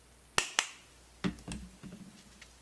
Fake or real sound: real